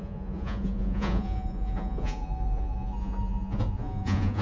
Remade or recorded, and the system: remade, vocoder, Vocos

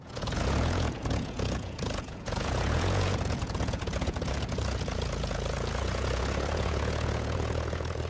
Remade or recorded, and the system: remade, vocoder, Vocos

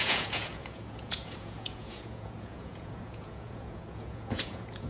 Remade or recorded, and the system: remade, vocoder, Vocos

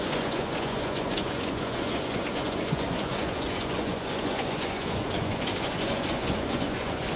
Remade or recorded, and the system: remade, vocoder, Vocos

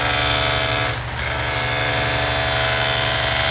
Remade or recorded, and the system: recorded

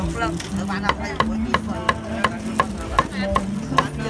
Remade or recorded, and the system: recorded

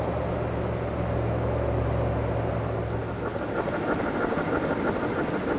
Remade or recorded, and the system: recorded